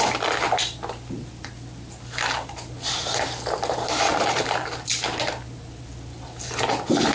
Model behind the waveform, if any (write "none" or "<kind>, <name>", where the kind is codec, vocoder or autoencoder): none